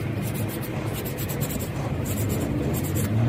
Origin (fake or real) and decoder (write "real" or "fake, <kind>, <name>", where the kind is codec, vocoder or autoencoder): real